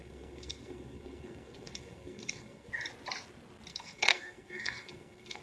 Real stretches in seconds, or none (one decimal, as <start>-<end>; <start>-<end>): 2.7-3.7